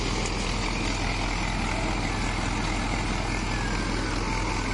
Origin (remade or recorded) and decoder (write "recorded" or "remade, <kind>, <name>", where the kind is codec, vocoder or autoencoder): recorded